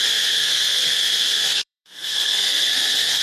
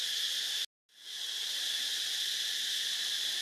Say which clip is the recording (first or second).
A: second